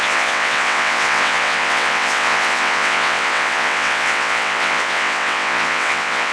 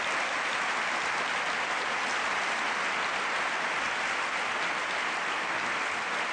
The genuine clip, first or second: second